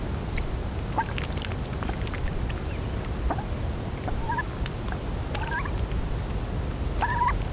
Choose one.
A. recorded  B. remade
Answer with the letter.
A